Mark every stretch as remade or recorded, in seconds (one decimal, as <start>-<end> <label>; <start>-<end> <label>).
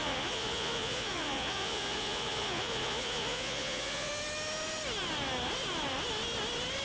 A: 0.0-4.1 remade; 4.1-6.8 recorded